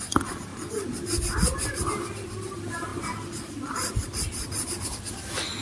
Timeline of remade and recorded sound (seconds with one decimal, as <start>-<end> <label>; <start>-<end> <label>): 0.0-0.5 recorded; 0.5-1.2 remade; 1.2-5.6 recorded